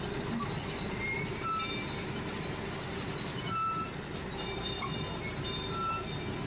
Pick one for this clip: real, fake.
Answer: real